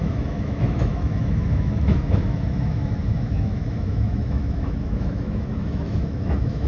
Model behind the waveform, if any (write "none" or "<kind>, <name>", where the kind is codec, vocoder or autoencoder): autoencoder, DAC-VAE